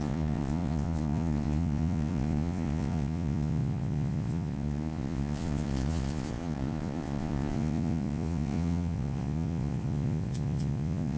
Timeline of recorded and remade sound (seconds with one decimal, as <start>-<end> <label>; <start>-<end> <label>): 0.0-11.2 remade